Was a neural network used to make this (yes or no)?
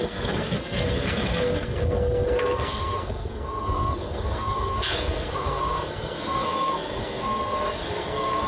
yes